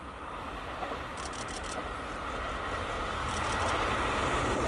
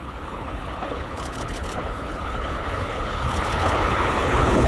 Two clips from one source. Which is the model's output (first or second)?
second